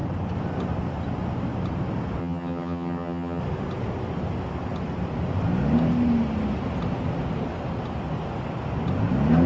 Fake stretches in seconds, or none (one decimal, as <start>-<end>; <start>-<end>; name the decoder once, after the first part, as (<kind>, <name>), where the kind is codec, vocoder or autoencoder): 2.2-3.4 (vocoder, HiFi-GAN)